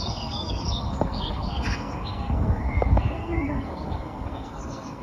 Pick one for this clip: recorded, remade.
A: remade